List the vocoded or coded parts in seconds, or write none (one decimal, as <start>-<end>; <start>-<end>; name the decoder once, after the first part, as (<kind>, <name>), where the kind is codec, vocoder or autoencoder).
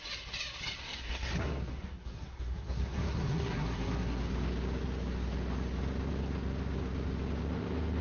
0.8-4.2 (codec, SNAC)